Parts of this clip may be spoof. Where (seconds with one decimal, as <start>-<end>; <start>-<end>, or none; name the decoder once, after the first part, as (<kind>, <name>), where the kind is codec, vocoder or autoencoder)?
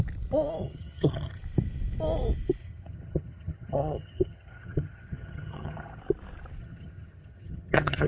0.6-1.4 (vocoder, HiFi-GAN); 2.6-6.0; 6.6-8.1